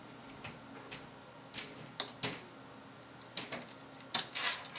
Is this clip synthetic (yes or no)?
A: no